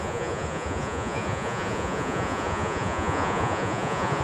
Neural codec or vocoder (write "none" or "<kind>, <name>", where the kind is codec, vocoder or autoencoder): vocoder, Vocos